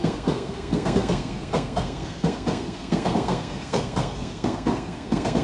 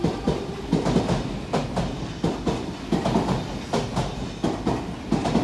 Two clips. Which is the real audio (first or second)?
second